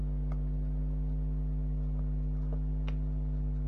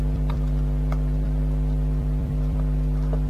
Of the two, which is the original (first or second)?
first